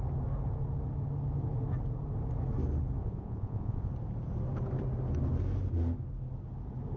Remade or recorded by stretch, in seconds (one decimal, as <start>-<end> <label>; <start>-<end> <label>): 0.0-3.0 recorded; 3.0-3.9 remade; 3.9-7.0 recorded